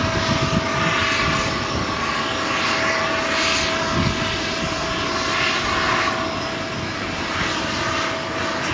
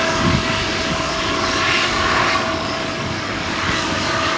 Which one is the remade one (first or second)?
second